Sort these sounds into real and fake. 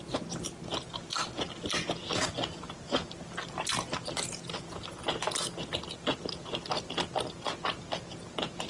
real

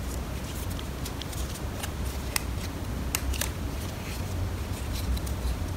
real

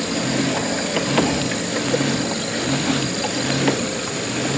real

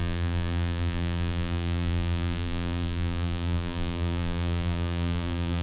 fake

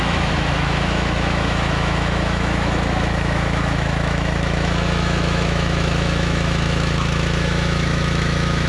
fake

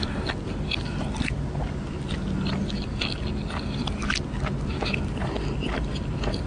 real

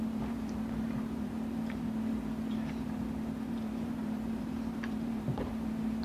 fake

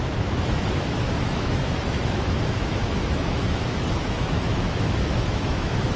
fake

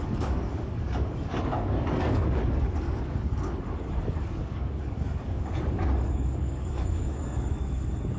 fake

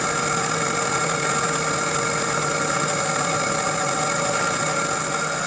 real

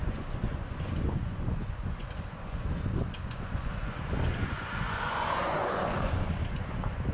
fake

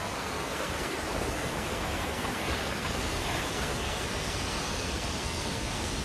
fake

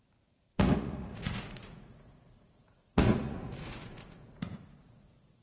fake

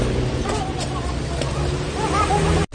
real